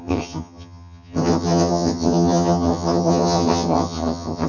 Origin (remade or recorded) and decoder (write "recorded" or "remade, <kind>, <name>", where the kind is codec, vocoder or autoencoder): remade, vocoder, HiFi-GAN